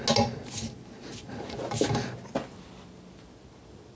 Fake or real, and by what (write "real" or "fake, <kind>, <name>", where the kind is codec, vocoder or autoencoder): real